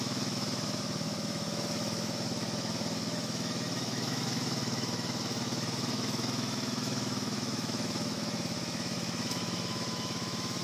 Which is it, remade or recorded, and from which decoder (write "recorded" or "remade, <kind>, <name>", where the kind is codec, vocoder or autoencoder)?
remade, autoencoder, DAC-VAE